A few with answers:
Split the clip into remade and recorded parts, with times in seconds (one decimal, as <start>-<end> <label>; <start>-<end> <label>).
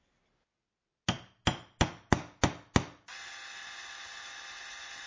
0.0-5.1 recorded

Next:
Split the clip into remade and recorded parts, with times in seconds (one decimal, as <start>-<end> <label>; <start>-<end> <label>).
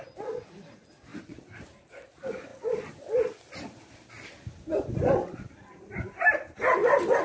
0.0-7.2 recorded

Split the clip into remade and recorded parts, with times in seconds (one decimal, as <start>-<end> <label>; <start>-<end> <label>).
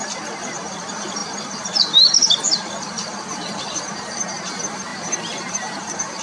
0.0-6.2 remade